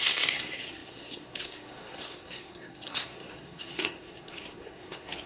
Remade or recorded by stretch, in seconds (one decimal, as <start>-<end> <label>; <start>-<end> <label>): 0.0-5.3 remade